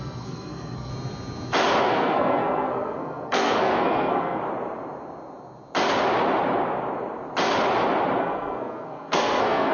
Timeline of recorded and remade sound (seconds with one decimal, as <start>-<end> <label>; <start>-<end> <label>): 0.0-0.9 remade; 0.9-1.8 recorded; 1.8-4.4 remade; 4.4-8.2 recorded; 8.2-9.7 remade